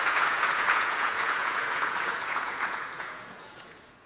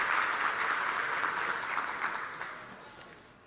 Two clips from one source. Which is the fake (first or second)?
first